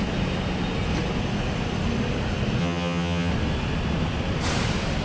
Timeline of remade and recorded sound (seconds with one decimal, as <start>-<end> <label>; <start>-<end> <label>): 0.0-2.6 recorded; 2.6-3.3 remade; 3.3-5.0 recorded